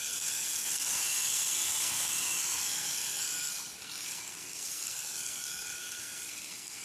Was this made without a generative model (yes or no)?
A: no